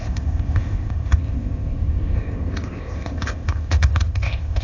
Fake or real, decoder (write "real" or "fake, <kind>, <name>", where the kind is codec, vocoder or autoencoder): fake, codec, ZipCodec